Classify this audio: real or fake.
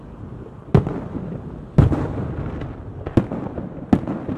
real